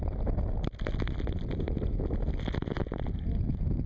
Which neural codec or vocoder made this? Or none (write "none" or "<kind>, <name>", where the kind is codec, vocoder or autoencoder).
none